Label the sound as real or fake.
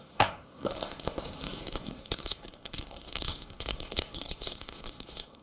fake